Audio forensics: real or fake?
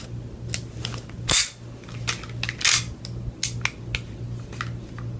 real